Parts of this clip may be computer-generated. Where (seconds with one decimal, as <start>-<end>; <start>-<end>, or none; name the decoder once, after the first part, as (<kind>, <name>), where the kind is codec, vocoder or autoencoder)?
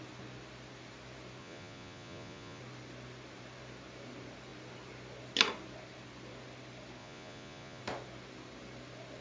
1.4-2.6 (vocoder, Vocos); 7.0-7.8